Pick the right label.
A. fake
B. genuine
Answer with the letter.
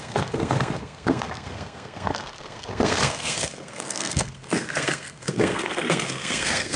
A